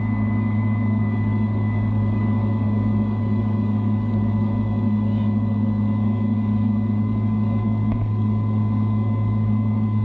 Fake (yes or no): yes